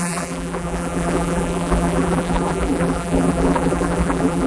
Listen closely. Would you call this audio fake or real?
fake